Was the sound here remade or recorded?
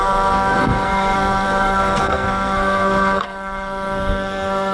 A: remade